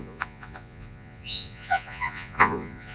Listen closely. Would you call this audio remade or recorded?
remade